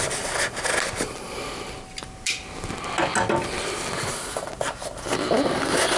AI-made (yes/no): no